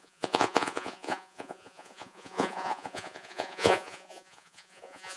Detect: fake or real fake